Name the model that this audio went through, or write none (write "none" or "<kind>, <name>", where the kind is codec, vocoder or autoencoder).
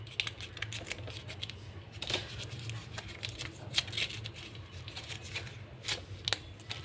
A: none